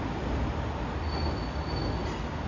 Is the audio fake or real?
real